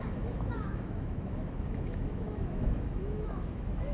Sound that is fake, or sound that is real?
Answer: fake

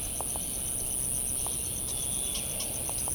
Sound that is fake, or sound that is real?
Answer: real